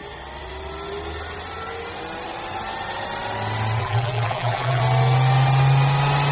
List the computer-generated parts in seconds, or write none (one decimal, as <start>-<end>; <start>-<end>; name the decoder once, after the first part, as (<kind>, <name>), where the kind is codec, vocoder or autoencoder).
3.8-4.8 (vocoder, BigVGAN v2)